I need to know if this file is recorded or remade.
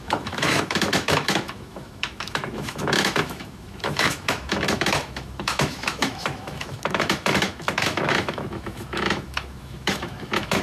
remade